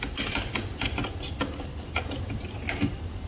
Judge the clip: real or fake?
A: real